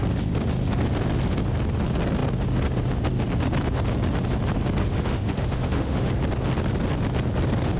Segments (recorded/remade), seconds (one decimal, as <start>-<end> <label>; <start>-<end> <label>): 0.0-4.8 recorded; 4.8-6.1 remade; 6.1-7.8 recorded